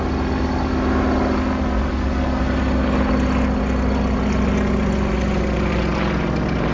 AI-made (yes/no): no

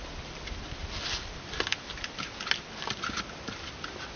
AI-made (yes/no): no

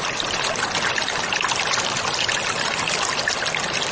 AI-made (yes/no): no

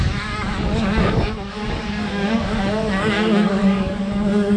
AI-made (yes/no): yes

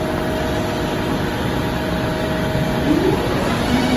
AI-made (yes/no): no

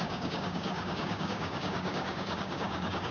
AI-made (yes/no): yes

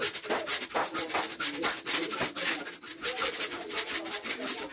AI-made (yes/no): no